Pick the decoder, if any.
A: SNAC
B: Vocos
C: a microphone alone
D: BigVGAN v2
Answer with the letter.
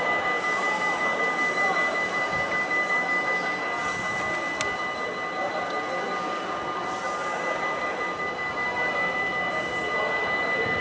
C